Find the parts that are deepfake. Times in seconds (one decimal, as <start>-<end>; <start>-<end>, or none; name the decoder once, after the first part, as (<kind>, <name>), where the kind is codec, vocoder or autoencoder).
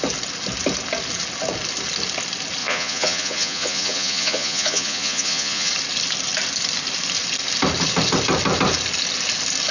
2.6-5.7 (vocoder, Vocos)